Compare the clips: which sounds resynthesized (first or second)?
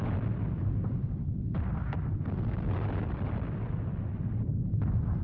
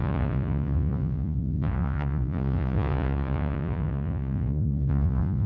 second